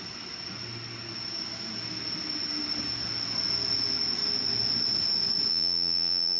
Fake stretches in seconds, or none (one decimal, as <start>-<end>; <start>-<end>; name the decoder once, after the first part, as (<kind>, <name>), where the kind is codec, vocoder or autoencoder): 5.5-6.4 (vocoder, Vocos)